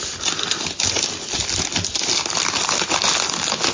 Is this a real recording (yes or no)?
yes